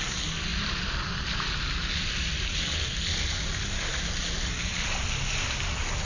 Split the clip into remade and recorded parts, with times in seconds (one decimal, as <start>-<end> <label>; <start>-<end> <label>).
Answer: 0.0-6.0 recorded